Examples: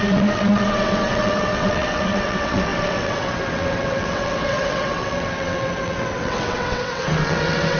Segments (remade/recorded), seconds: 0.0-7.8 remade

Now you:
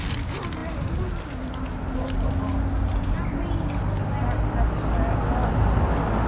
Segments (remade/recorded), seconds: 0.0-6.3 recorded

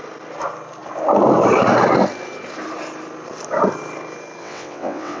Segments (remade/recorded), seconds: 0.0-4.4 recorded; 4.4-5.2 remade

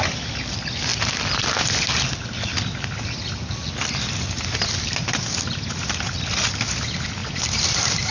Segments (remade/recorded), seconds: 0.0-8.1 recorded

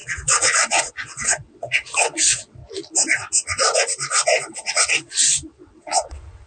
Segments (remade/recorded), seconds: 0.0-2.6 remade; 2.6-4.5 recorded; 4.5-6.5 remade

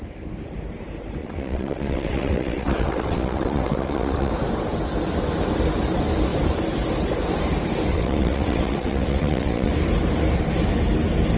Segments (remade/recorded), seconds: 0.0-1.2 recorded; 1.2-4.3 remade; 4.3-7.9 recorded; 7.9-9.7 remade; 9.7-11.4 recorded

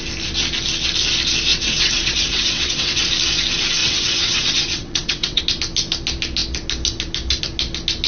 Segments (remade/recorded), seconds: 0.0-1.5 recorded; 1.5-3.0 remade; 3.0-3.8 recorded; 3.8-5.4 remade; 5.4-8.1 recorded

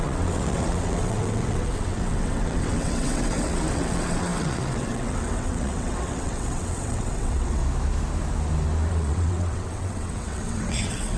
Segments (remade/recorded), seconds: 0.0-7.6 remade; 7.6-8.9 recorded; 8.9-11.2 remade